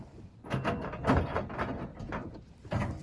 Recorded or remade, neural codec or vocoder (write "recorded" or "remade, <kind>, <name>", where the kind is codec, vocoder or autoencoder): recorded